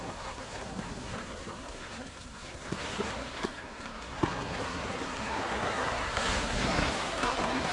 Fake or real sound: fake